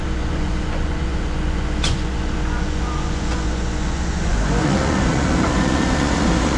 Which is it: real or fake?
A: fake